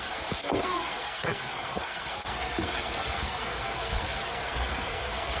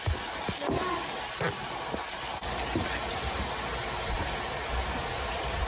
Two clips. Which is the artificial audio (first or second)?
first